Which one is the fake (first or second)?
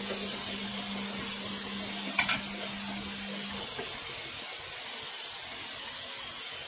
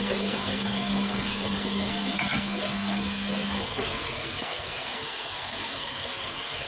second